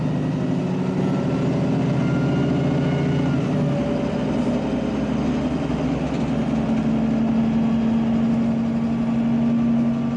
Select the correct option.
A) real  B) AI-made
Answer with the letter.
A